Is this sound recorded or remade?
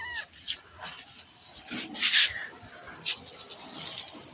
recorded